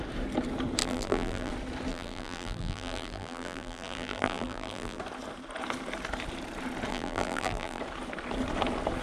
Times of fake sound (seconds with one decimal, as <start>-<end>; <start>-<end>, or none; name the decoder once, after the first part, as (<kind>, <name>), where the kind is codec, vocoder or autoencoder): 0.8-1.5 (vocoder, BigVGAN v2); 1.9-5.0; 6.9-7.8

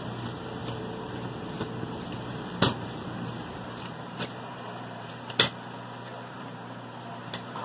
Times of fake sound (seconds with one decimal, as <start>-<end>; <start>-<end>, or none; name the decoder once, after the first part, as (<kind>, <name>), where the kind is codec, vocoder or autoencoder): 0.6-5.1 (vocoder, BigVGAN v2); 6.1-7.6

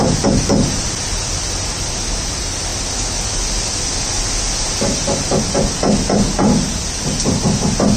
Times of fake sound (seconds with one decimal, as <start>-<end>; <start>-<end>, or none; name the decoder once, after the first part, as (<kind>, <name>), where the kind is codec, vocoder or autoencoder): none

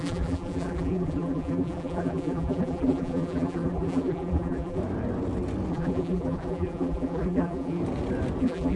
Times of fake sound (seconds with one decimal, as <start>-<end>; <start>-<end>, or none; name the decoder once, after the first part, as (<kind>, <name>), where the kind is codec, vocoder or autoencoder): 0.0-4.8 (vocoder, BigVGAN v2); 5.7-7.8; 8.4-8.8